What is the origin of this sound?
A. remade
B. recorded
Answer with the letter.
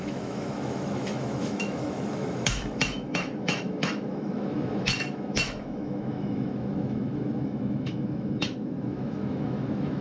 A